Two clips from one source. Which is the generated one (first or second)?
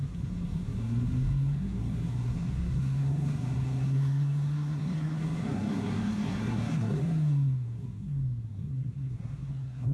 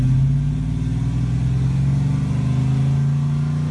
first